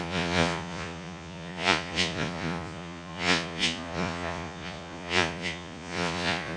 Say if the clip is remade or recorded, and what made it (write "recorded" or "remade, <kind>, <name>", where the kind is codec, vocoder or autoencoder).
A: remade, vocoder, Vocos